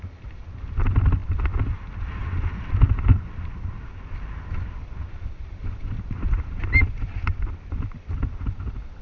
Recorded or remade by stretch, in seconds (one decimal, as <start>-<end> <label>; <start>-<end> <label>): 0.0-1.2 recorded; 1.2-2.0 remade; 2.0-9.0 recorded